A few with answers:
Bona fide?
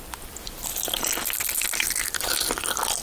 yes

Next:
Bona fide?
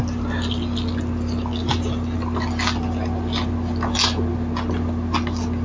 yes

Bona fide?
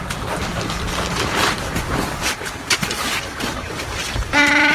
no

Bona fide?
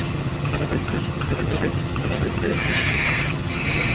no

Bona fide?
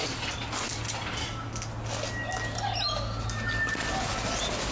yes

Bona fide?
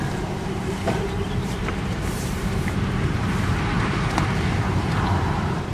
no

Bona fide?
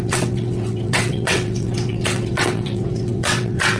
no